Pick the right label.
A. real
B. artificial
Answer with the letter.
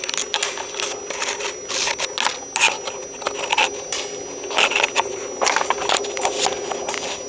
A